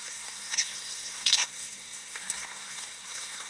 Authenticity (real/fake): fake